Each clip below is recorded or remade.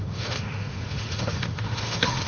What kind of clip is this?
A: remade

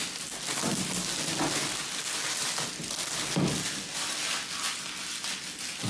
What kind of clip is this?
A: recorded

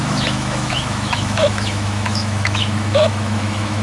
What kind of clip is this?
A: remade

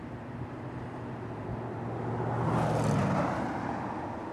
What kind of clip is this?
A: recorded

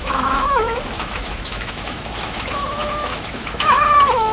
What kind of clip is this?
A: remade